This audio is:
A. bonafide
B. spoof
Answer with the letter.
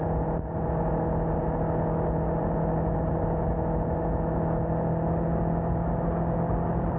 A